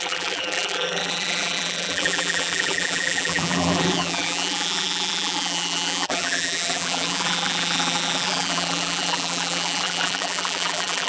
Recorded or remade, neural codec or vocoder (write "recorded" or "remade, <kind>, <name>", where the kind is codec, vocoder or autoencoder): remade, vocoder, BigVGAN v2